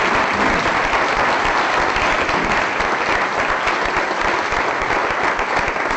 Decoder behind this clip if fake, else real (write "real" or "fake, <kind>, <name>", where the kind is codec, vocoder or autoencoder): real